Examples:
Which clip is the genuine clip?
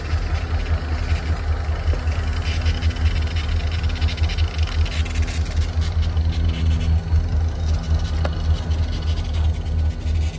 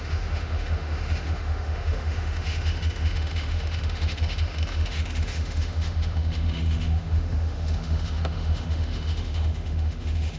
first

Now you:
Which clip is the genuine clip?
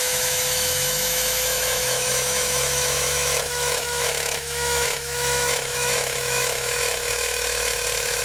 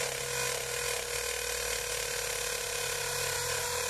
second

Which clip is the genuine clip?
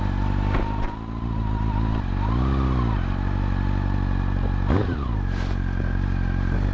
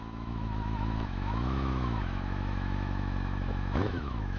first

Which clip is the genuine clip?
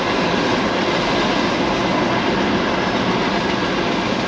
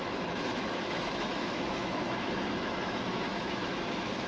first